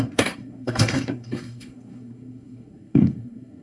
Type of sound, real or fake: fake